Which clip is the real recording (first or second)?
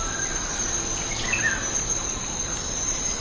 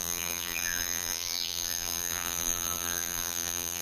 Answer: first